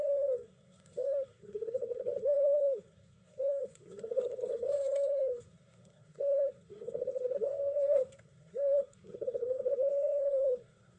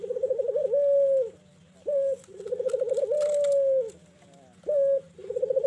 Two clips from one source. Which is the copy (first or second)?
first